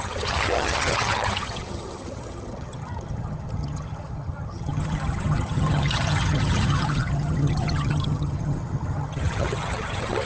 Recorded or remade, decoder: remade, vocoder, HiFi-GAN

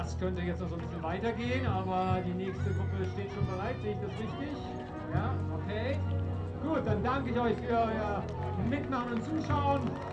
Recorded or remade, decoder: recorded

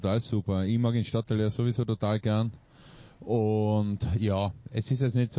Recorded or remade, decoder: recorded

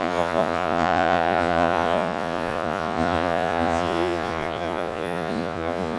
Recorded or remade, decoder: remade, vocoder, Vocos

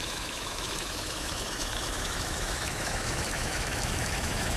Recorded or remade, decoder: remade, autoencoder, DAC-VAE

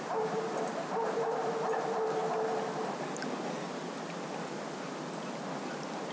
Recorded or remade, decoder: recorded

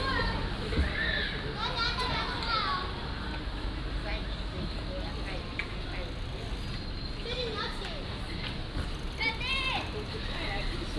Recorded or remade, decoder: recorded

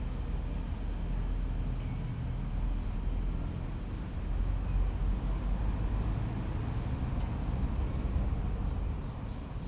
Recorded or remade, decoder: recorded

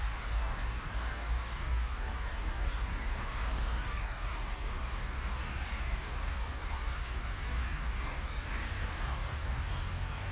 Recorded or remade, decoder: remade, codec, DAC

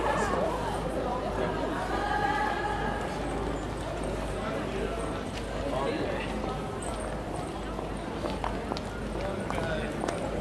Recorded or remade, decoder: recorded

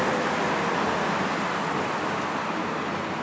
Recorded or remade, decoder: recorded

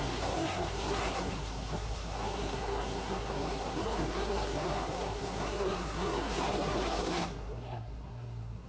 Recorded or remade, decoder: remade, codec, SNAC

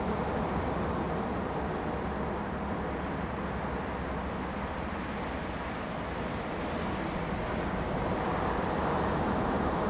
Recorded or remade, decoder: recorded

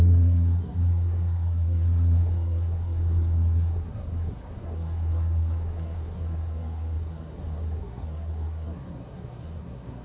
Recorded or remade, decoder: remade, codec, SNAC